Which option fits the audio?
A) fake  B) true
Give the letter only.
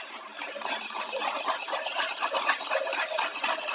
A